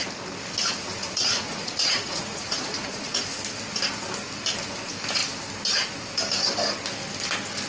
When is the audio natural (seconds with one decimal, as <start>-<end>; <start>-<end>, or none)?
0.0-1.0; 3.2-7.7